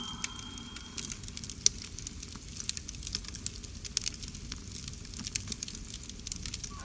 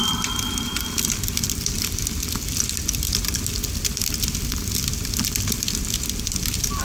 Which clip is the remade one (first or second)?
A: second